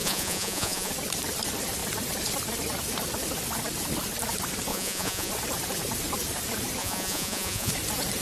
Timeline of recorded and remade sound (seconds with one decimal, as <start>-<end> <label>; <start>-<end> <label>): 0.0-0.9 remade; 0.9-4.7 recorded; 4.7-5.3 remade; 5.3-6.8 recorded; 6.8-7.7 remade; 7.7-8.2 recorded